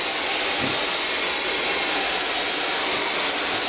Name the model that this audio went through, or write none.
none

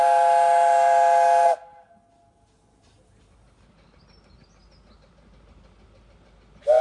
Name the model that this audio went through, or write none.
none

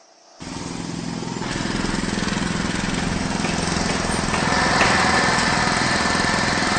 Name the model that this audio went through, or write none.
none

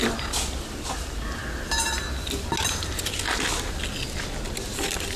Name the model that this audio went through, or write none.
none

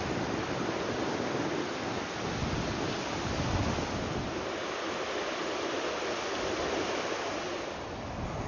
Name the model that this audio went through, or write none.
none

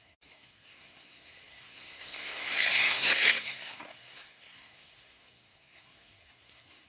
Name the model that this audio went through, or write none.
codec, SNAC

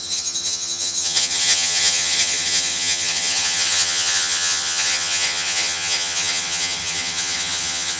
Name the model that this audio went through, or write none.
vocoder, HiFi-GAN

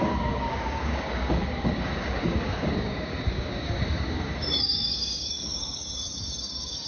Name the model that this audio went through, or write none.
codec, DAC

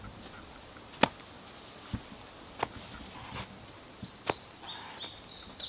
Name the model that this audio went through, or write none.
none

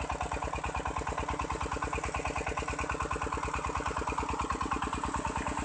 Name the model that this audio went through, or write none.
none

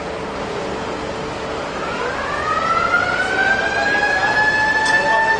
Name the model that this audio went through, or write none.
none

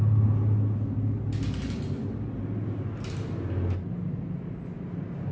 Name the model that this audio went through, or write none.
none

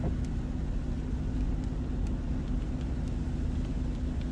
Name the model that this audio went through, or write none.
none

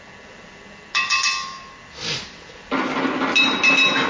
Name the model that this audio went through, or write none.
none